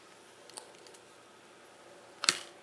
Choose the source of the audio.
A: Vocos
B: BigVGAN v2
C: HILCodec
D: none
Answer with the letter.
D